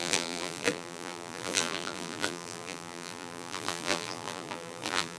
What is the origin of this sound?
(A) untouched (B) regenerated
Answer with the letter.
B